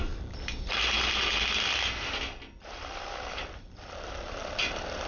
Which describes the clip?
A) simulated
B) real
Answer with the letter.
B